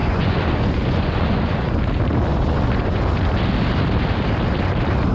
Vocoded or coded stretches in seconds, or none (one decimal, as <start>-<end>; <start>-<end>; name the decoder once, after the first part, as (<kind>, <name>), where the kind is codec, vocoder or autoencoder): 0.0-1.8 (vocoder, Vocos); 2.3-3.0